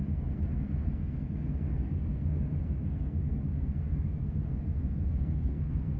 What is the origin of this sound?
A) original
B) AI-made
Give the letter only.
B